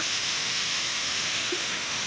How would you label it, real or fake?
fake